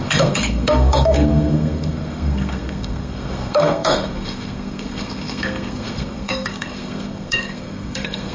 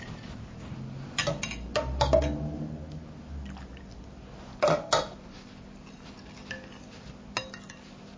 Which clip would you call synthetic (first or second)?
first